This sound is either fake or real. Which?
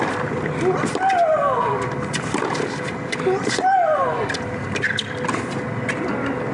real